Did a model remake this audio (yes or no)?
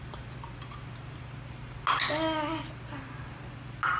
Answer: no